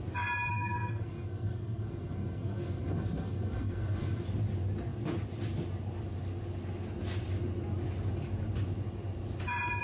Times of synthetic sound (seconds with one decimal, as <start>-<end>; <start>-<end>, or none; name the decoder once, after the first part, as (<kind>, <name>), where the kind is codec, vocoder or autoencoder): 0.5-4.2 (codec, SNAC)